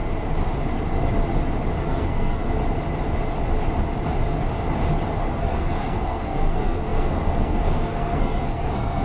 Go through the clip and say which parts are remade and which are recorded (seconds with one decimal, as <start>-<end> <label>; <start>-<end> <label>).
0.0-1.8 recorded; 1.8-2.6 remade; 2.6-5.2 recorded; 5.2-9.0 remade